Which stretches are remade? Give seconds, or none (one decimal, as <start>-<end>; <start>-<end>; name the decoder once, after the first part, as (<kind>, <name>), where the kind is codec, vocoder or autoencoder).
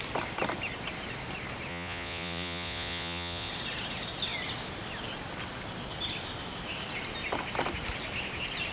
1.7-3.5 (vocoder, Vocos)